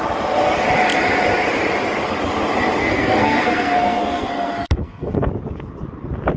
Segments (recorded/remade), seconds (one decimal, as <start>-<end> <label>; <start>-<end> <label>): 0.0-2.8 recorded; 2.8-5.3 remade; 5.3-6.4 recorded